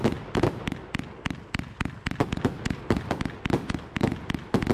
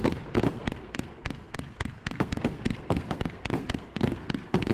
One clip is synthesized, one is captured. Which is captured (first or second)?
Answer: first